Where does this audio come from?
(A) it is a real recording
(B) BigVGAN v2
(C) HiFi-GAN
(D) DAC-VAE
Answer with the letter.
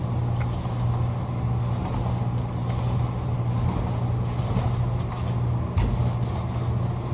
A